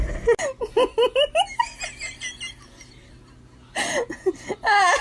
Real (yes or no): yes